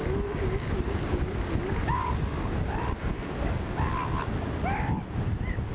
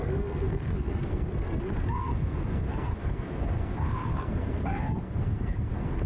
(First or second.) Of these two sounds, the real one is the first